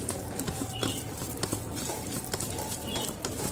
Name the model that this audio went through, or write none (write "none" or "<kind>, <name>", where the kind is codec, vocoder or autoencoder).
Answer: vocoder, BigVGAN v2